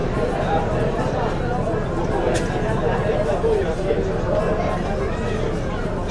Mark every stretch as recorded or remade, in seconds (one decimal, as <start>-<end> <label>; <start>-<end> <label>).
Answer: 0.0-1.4 remade; 1.4-6.1 recorded